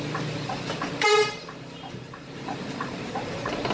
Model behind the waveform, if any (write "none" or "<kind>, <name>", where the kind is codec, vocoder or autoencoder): vocoder, BigVGAN v2